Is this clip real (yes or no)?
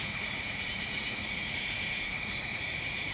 no